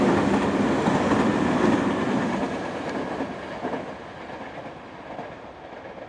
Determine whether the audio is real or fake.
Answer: real